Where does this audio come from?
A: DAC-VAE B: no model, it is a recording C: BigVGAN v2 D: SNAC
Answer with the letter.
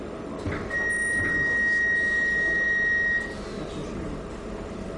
B